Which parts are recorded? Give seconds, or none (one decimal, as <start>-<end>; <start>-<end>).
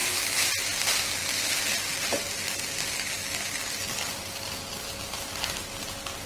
0.5-6.3